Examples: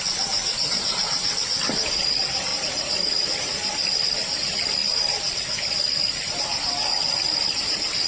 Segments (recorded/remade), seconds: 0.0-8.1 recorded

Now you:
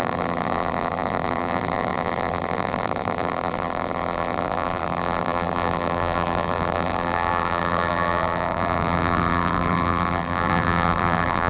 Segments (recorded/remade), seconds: 0.0-11.5 remade

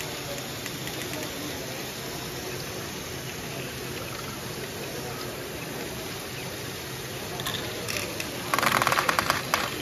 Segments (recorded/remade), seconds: 0.0-9.8 recorded

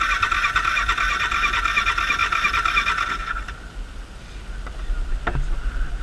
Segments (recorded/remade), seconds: 0.0-6.0 recorded